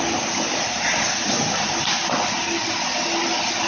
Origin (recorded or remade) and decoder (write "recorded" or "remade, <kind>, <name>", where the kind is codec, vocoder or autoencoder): recorded